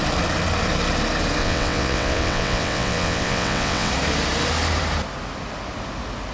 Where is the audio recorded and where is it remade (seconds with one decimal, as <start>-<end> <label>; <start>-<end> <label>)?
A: 0.0-1.4 recorded; 1.4-3.9 remade; 3.9-6.3 recorded